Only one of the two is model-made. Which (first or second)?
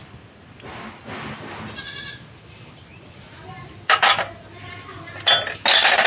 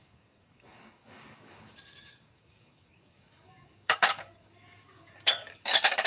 second